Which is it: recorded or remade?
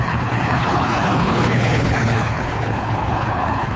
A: remade